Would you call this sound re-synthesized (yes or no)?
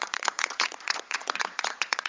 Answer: yes